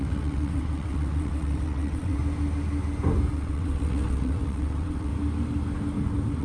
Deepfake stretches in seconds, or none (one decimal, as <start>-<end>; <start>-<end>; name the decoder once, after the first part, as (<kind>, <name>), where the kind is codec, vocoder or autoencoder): 0.0-2.2 (vocoder, WaveNeXt); 3.3-5.1